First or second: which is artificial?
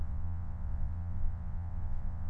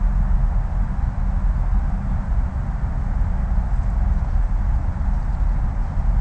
first